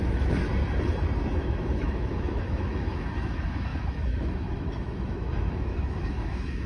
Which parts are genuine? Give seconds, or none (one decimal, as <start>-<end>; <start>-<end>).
0.4-1.4